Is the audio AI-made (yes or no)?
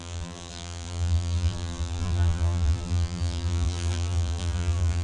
yes